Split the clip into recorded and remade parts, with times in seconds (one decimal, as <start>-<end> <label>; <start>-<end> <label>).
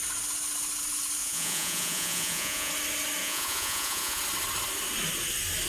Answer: 0.0-1.2 recorded; 1.2-2.7 remade; 2.7-3.2 recorded; 3.2-4.2 remade; 4.2-5.7 recorded